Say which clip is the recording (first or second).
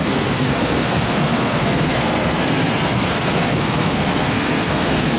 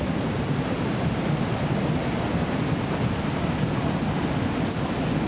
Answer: second